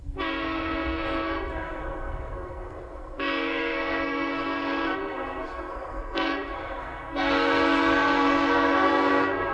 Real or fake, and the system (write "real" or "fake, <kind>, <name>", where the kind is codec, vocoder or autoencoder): fake, codec, SNAC